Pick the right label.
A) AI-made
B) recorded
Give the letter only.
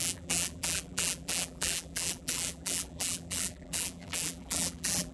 A